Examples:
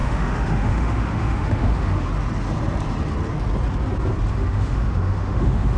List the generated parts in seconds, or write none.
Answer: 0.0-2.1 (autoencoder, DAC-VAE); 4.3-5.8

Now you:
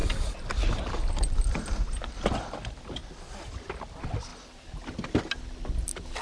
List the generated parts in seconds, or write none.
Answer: none

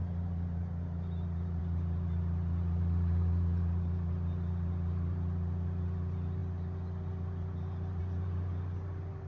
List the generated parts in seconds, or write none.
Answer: none

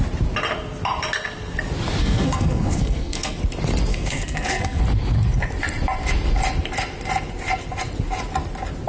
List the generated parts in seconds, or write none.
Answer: 2.0-3.4 (codec, SNAC); 3.9-4.8

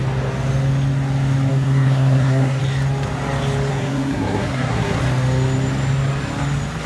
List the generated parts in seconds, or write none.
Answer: 1.5-2.6 (codec, SNAC); 3.7-5.0